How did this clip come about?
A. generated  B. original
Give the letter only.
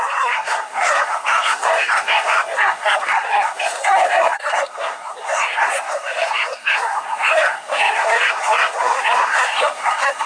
A